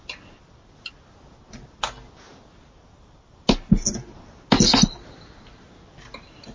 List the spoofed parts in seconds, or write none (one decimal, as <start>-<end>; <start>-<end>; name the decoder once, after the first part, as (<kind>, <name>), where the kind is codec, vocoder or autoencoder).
none